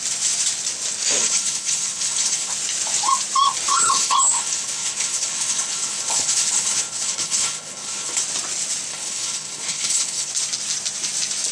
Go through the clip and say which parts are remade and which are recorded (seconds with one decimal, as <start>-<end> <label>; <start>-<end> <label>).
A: 0.0-1.2 recorded; 1.2-2.5 remade; 2.5-3.7 recorded; 3.7-8.2 remade; 8.2-8.9 recorded; 8.9-10.3 remade; 10.3-11.5 recorded